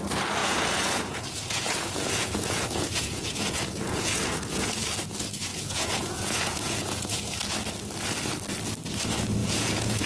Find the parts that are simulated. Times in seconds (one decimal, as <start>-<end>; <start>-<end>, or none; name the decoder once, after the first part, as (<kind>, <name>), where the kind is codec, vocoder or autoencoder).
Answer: 0.4-4.7 (vocoder, Vocos); 5.5-7.4; 9.4-10.1